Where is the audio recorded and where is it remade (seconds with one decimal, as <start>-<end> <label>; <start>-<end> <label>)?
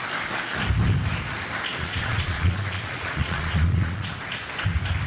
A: 0.0-1.7 recorded; 1.7-4.1 remade; 4.1-5.1 recorded